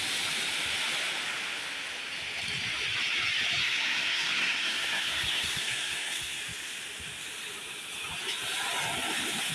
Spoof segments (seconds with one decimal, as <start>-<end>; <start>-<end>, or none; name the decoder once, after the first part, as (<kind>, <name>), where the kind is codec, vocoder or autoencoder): 3.6-6.4 (codec, SNAC)